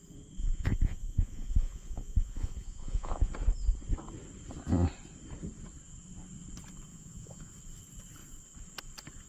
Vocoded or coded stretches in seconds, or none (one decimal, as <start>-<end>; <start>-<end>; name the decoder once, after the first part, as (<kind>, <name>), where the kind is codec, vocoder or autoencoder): 0.4-3.3 (vocoder, Vocos); 6.9-7.5